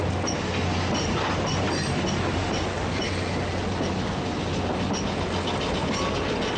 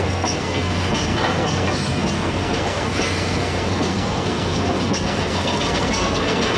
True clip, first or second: first